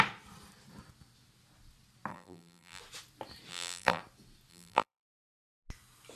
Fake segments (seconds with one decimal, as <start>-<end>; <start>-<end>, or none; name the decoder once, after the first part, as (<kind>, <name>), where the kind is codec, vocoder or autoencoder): 2.1-2.8 (vocoder, BigVGAN v2); 3.5-4.0; 4.5-5.1